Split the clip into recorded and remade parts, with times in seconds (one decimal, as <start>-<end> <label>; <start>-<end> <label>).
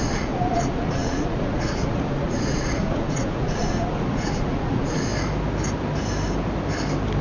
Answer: 0.0-5.1 remade; 5.1-7.2 recorded